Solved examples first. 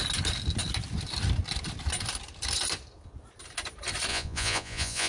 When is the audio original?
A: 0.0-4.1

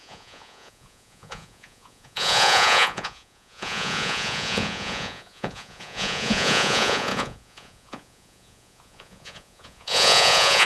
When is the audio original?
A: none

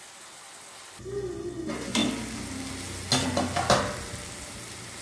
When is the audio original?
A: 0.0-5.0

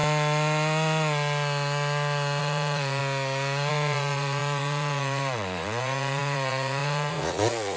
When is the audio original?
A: 0.0-2.4; 3.0-3.7

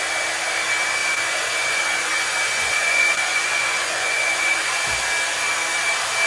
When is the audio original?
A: 0.0-1.0; 4.8-6.3

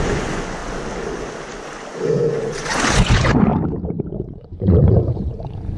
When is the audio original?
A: 0.6-1.9; 3.5-4.1

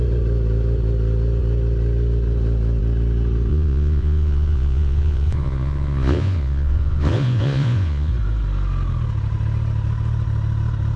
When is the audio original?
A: 0.0-3.5; 8.1-11.0